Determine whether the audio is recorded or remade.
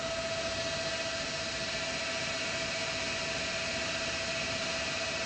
recorded